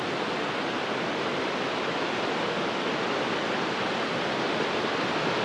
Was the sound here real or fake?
real